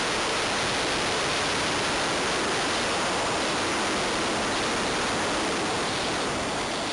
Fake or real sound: real